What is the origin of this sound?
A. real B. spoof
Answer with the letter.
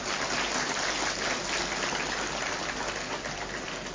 A